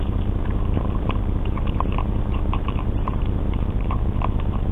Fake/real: fake